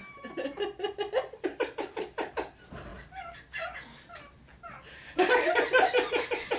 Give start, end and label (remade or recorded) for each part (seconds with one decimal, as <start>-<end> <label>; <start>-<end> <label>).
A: 0.0-6.6 recorded